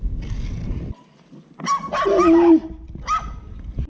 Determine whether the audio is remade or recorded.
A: recorded